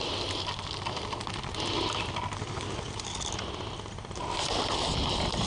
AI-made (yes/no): no